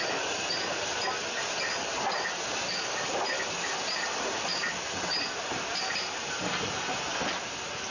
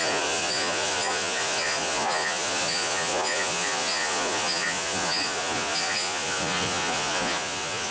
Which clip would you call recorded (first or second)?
first